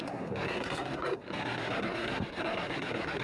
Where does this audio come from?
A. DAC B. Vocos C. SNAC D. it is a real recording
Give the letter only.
C